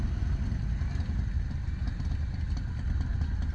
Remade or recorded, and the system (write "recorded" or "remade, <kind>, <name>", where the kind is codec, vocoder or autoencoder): recorded